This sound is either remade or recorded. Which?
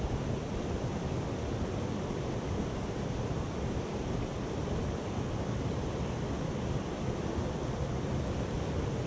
recorded